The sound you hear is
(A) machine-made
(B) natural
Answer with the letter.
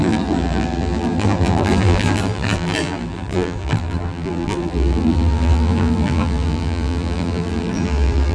A